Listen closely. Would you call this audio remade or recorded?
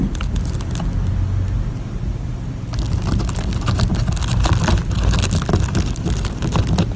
recorded